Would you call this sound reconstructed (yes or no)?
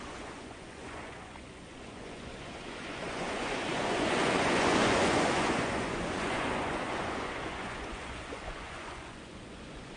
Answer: yes